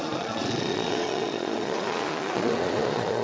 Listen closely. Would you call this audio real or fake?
fake